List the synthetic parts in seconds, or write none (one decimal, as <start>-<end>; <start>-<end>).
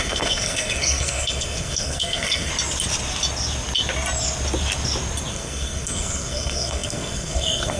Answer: 0.0-2.5; 5.3-7.8